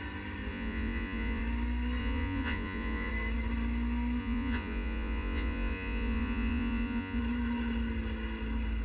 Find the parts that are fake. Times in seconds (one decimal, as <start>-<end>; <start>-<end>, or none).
0.5-1.4; 2.0-3.1; 4.2-7.2